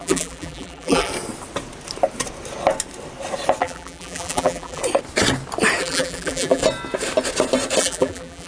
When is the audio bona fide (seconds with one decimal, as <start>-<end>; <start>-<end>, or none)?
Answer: 1.1-3.6; 4.8-5.8; 6.6-7.8